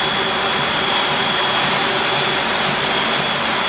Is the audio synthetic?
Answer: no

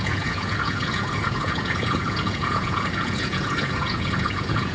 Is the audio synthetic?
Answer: yes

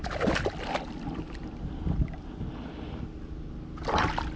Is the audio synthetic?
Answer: no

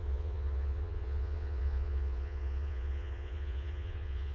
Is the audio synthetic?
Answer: yes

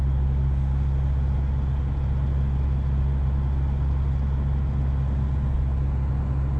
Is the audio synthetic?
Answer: no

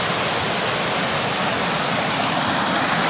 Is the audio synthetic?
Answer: no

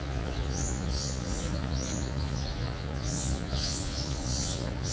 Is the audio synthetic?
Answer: yes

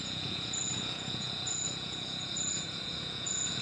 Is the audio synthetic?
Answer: yes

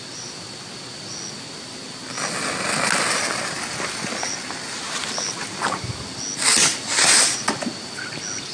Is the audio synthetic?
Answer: no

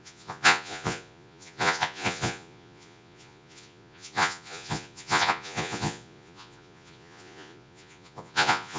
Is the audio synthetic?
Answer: yes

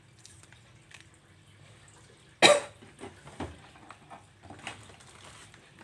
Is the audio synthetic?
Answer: no